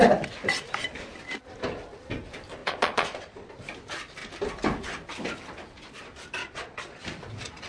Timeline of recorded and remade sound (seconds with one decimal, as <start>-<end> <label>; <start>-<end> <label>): 0.0-2.6 recorded; 2.6-3.5 remade; 3.5-6.4 recorded; 6.4-7.0 remade; 7.0-7.7 recorded